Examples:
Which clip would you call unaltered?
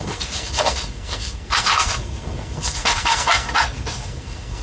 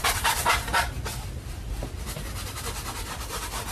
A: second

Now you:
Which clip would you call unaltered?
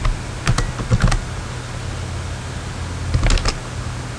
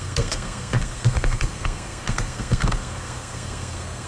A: first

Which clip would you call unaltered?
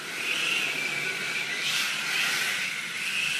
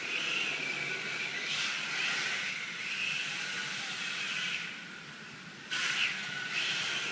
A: first